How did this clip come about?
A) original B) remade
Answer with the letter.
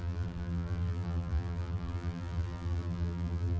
B